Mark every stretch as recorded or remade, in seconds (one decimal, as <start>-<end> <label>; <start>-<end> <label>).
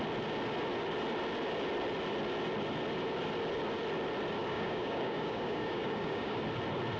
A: 0.0-4.4 recorded; 4.4-6.4 remade; 6.4-7.0 recorded